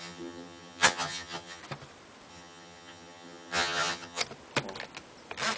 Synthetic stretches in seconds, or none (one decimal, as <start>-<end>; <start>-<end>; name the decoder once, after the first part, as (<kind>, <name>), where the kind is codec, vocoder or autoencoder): 0.0-1.6 (vocoder, HiFi-GAN); 2.3-4.2